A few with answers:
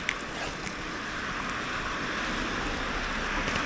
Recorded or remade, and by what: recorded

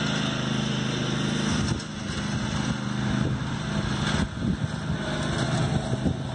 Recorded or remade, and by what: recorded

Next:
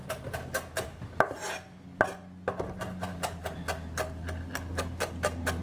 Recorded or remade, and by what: recorded